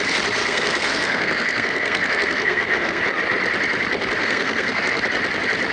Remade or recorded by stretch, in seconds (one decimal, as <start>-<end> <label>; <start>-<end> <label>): 0.0-0.4 recorded; 0.4-3.0 remade; 3.0-4.2 recorded; 4.2-5.0 remade; 5.0-5.7 recorded